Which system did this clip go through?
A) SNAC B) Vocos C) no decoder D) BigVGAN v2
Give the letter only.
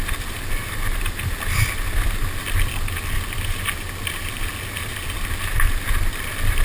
C